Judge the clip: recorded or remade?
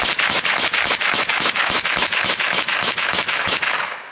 remade